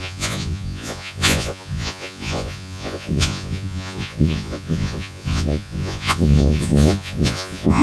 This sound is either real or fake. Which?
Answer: fake